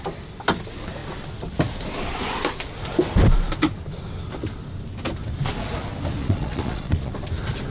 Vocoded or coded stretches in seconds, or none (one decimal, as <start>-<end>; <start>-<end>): 6.2-7.1

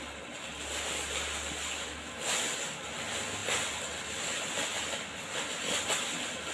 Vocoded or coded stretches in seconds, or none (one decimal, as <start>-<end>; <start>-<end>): none

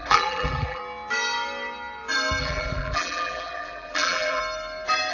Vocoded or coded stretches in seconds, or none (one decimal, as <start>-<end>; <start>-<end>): 0.0-0.8; 2.4-4.4

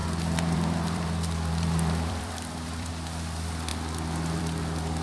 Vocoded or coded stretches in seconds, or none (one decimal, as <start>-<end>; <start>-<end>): 0.0-2.9

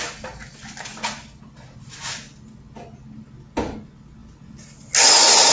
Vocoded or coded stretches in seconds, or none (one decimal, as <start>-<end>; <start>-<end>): none

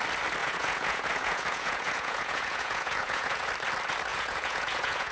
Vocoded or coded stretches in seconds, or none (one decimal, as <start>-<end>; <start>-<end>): 0.4-3.5; 4.1-5.1

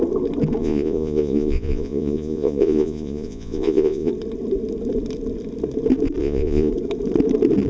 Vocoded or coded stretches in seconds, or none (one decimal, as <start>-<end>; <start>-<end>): 0.6-4.1; 6.2-6.7